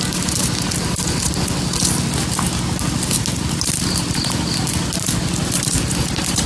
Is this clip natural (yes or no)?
yes